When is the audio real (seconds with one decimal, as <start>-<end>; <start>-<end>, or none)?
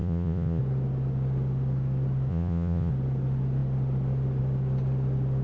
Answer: 0.6-2.3; 2.9-5.4